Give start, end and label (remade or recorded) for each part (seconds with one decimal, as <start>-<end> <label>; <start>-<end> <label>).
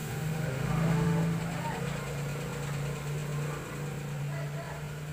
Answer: 0.0-1.4 remade; 1.4-5.1 recorded